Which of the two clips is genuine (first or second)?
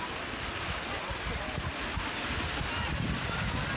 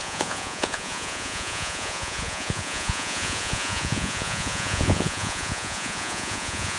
first